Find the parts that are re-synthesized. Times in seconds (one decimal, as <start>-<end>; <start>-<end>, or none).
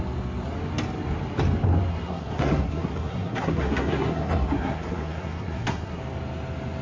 1.9-6.0